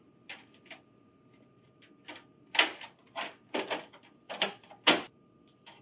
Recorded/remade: recorded